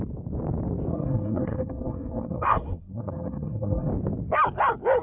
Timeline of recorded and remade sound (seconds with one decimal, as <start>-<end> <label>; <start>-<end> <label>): 0.0-0.9 recorded; 0.9-3.9 remade; 3.9-5.0 recorded